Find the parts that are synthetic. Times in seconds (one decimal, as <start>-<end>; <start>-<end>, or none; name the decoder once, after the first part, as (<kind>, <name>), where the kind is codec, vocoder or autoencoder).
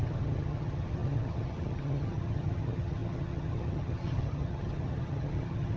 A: 0.0-5.8 (vocoder, HiFi-GAN)